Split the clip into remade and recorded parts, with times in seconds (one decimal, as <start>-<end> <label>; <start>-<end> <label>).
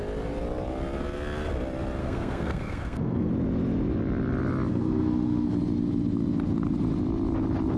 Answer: 0.0-2.0 recorded; 2.0-3.3 remade; 3.3-4.7 recorded; 4.7-5.5 remade; 5.5-7.8 recorded